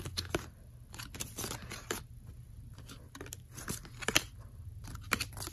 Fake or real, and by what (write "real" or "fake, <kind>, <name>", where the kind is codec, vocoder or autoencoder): real